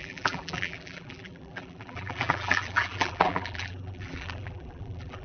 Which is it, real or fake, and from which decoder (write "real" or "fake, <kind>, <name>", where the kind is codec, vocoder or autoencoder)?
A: fake, vocoder, BigVGAN v2